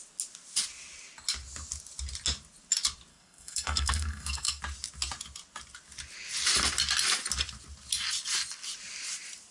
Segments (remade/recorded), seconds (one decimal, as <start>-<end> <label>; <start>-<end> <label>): 0.0-3.1 recorded; 3.1-4.6 remade; 4.6-9.5 recorded